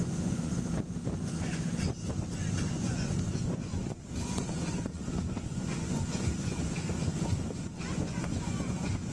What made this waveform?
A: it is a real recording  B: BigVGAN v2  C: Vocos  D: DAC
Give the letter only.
C